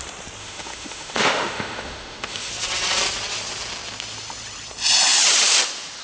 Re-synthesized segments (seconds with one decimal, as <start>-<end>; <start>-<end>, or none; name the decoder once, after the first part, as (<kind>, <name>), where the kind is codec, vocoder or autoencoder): 0.4-2.5 (autoencoder, DAC-VAE)